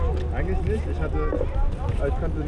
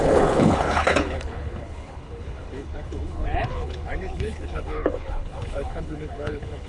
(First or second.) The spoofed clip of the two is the second